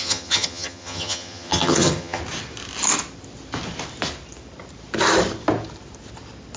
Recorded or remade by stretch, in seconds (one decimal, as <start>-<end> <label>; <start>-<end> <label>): 0.0-2.2 remade; 2.2-6.6 recorded